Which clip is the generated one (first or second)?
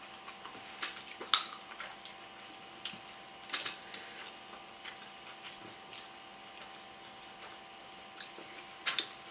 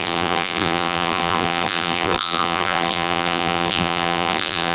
second